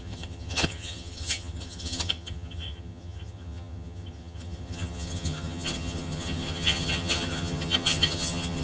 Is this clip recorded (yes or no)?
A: no